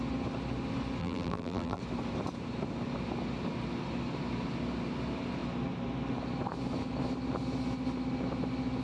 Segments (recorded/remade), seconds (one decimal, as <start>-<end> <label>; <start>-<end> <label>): 0.0-1.0 recorded; 1.0-1.8 remade; 1.8-8.8 recorded